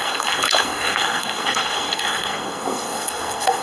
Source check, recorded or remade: remade